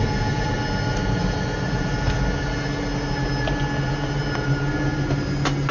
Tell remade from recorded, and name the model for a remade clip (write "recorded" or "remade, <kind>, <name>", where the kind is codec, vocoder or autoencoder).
recorded